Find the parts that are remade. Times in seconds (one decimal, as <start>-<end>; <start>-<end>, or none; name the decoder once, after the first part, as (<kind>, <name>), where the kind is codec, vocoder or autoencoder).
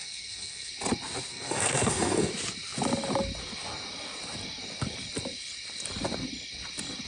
0.0-0.7 (codec, SNAC); 1.3-2.3